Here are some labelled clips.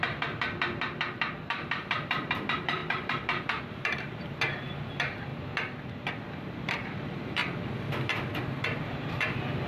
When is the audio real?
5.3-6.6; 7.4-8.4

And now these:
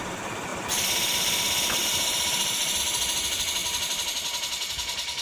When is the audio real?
0.0-5.2

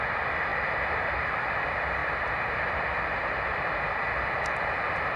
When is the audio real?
2.0-5.2

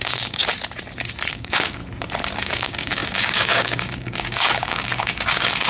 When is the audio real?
0.4-1.3; 1.8-2.4

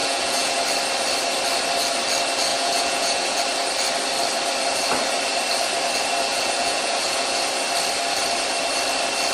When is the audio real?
0.6-2.5; 3.4-6.3; 7.4-9.3

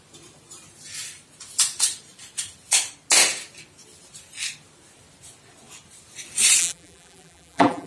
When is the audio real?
0.0-6.6

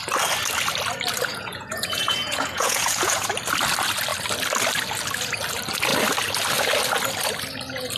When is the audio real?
0.0-1.3; 3.3-8.0

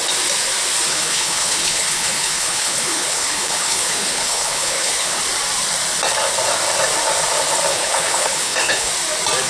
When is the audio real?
0.0-0.9; 5.2-7.7; 8.9-9.5